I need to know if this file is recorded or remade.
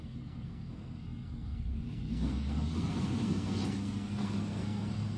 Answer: remade